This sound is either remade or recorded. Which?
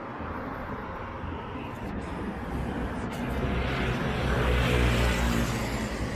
recorded